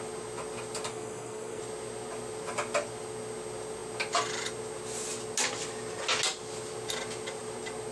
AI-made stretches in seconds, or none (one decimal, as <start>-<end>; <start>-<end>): 0.9-1.6